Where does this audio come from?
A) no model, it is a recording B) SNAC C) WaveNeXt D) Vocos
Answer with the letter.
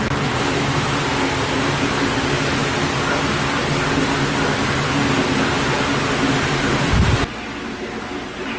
A